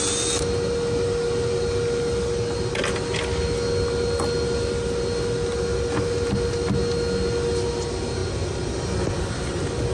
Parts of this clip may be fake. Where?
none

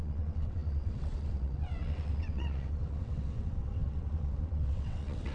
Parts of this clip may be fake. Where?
0.0-5.3 (vocoder, WaveNeXt)

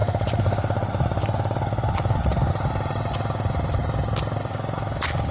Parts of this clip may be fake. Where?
none

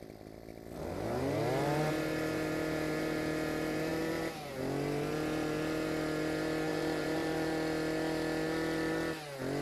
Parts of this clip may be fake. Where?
6.7-7.5 (vocoder, BigVGAN v2)

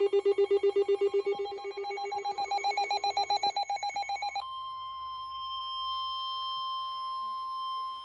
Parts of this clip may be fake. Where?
2.0-5.6 (vocoder, BigVGAN v2)

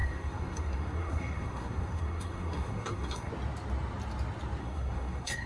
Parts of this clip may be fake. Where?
0.0-3.3 (codec, SNAC); 4.6-5.5